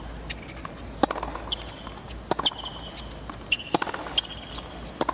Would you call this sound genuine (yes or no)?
yes